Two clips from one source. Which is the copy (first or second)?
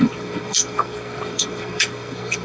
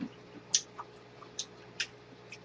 first